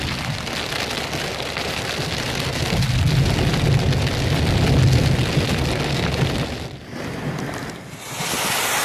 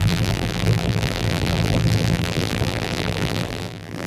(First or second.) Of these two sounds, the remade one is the second